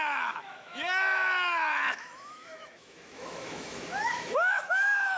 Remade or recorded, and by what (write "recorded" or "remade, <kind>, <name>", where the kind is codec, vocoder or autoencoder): remade, autoencoder, DAC-VAE